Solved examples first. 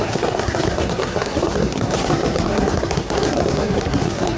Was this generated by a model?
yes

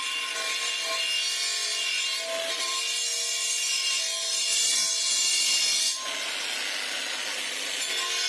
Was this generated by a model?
no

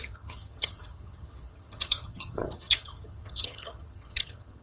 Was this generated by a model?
yes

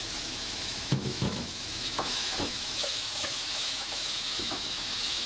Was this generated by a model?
yes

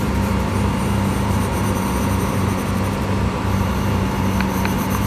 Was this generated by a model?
yes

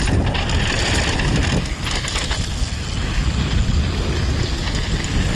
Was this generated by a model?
no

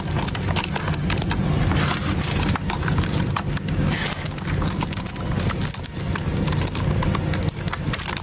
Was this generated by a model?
no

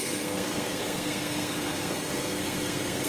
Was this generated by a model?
yes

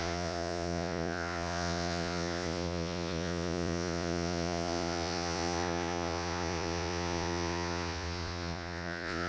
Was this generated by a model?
yes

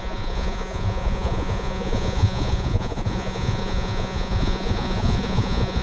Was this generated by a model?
yes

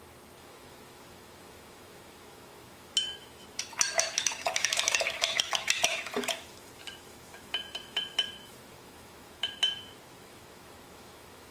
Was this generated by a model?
yes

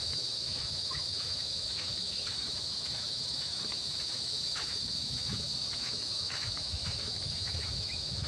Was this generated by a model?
yes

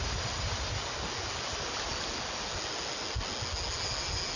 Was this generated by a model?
no